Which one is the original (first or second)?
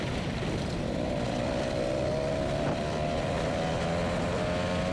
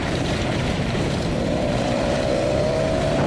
first